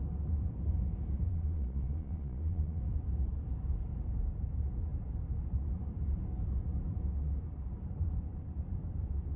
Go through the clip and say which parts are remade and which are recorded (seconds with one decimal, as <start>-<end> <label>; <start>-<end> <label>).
0.0-1.3 recorded; 1.3-2.8 remade; 2.8-9.4 recorded